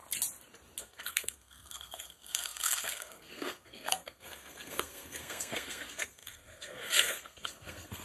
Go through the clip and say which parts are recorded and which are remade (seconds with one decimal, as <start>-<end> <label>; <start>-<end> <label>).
0.0-0.8 recorded; 0.8-8.0 remade